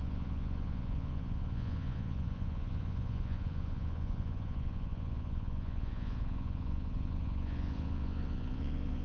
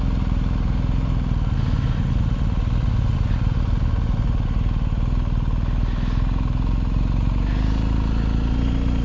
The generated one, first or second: first